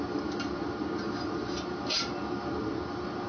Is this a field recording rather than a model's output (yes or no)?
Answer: yes